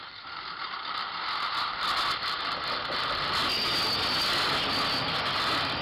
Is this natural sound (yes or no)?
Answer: yes